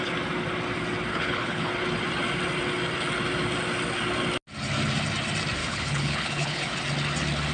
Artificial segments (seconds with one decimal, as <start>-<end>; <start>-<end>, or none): 1.1-1.7; 5.6-6.7